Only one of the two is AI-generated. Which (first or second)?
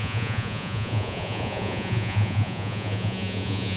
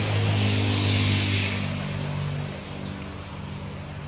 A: first